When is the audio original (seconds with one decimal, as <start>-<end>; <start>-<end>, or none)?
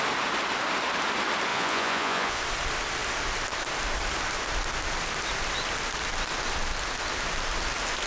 0.0-1.5; 2.4-8.1